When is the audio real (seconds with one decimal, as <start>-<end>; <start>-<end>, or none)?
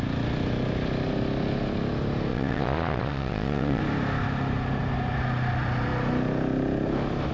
0.0-2.3; 3.8-7.3